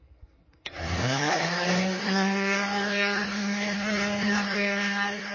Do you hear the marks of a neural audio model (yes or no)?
yes